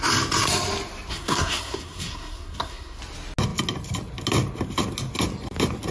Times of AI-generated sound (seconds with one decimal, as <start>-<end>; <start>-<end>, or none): 1.1-3.0